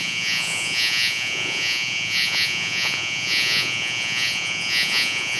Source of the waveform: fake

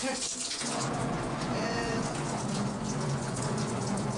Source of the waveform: fake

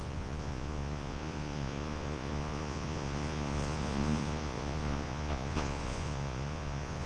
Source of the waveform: fake